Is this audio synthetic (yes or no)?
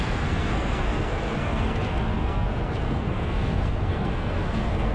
yes